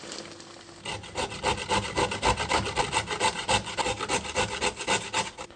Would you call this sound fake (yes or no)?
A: no